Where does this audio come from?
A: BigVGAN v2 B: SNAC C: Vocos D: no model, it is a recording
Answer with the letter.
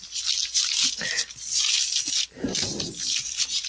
D